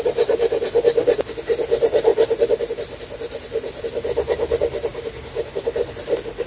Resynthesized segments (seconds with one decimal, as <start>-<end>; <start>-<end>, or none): none